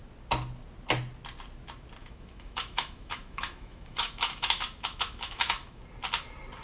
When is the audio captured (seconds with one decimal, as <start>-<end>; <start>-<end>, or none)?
0.0-2.0; 5.8-6.6